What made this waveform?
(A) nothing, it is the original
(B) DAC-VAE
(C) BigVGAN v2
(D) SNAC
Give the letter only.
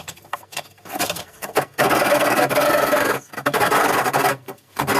D